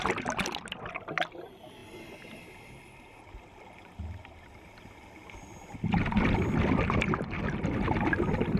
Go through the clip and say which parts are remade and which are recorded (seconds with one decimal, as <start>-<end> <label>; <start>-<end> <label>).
0.0-8.6 recorded